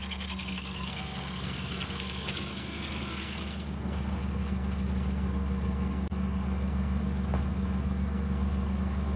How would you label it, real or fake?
fake